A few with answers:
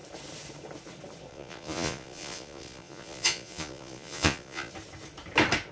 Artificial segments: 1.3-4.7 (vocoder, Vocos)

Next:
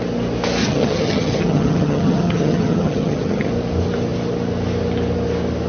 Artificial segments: 0.6-3.5 (vocoder, HiFi-GAN)

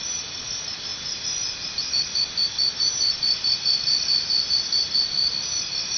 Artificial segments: none

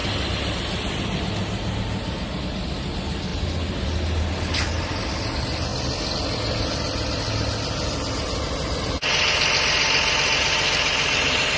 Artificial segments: none